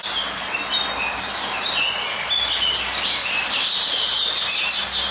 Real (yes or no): yes